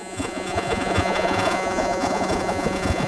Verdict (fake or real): fake